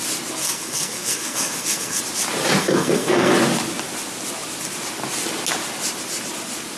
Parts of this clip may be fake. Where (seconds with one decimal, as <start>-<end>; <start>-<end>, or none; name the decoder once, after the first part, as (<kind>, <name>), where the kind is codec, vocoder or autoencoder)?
0.4-2.0 (codec, SNAC); 2.6-3.3